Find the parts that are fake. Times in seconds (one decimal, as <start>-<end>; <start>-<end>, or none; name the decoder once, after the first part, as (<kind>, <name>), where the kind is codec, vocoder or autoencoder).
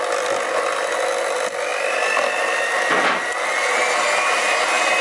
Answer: none